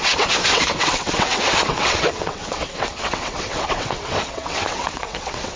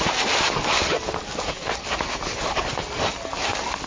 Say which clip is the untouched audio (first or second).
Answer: second